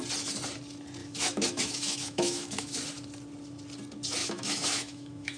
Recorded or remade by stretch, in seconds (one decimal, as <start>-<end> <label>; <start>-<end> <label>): 0.0-1.0 recorded; 1.0-2.8 remade; 2.8-4.2 recorded; 4.2-5.4 remade